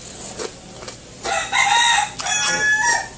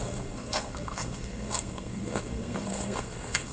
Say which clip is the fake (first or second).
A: second